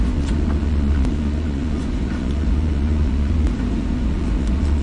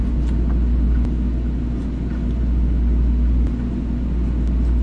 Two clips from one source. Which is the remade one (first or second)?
first